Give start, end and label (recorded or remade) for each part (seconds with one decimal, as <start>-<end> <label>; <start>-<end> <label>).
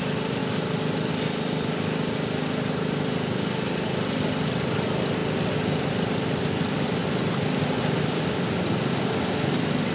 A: 0.0-0.4 remade; 0.4-1.1 recorded; 1.1-9.9 remade